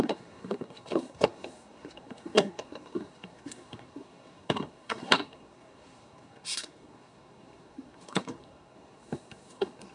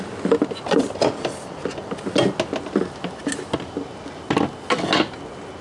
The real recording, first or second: second